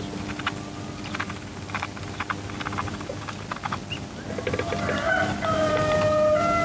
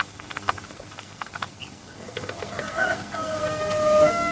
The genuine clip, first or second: first